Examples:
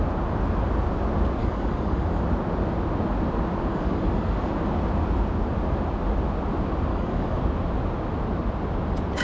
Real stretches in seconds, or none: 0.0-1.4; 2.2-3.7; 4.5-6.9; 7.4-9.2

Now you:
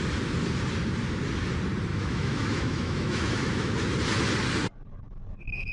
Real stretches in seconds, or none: 0.0-1.9; 3.8-5.7